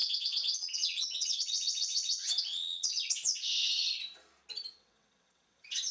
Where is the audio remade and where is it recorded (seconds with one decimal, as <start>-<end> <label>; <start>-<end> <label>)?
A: 0.0-3.9 remade; 3.9-4.7 recorded; 4.7-5.9 remade